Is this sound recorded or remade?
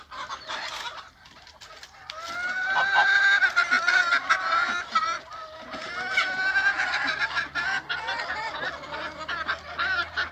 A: recorded